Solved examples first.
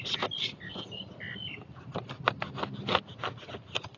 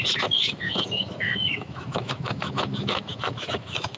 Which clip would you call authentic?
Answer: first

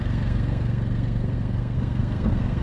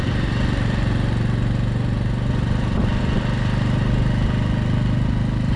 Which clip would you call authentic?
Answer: second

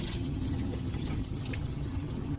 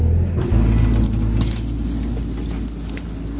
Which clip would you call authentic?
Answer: second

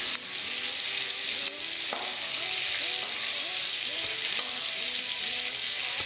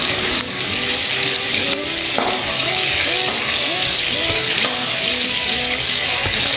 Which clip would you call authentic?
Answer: first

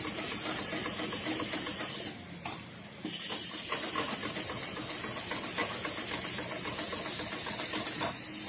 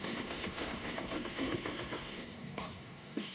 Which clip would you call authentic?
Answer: first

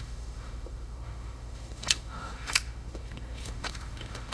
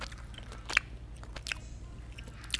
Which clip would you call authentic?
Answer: second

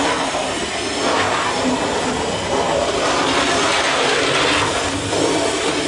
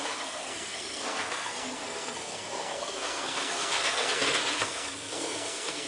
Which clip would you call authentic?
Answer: first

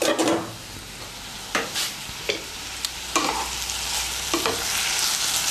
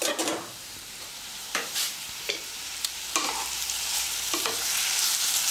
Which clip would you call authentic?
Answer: first